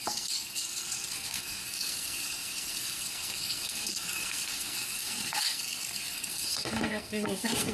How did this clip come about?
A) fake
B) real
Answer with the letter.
A